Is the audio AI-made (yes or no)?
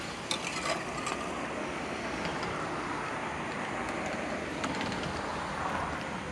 no